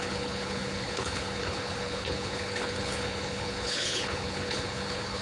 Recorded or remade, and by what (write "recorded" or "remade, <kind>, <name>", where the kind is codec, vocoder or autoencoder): remade, codec, HILCodec